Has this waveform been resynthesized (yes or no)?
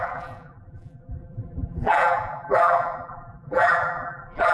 yes